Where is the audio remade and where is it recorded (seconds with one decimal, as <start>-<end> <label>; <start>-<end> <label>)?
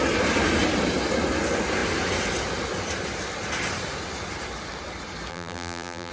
0.0-5.3 recorded; 5.3-6.1 remade